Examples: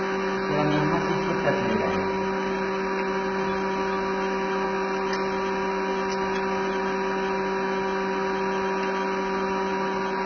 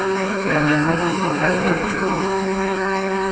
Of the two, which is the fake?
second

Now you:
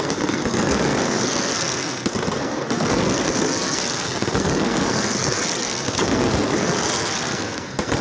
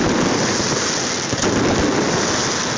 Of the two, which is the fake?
first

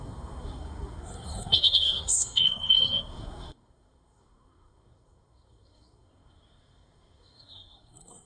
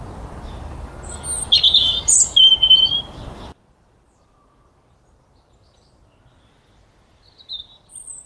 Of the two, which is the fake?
first